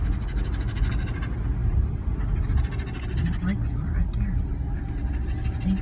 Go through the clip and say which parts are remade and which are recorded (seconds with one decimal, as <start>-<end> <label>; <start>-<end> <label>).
0.0-5.8 recorded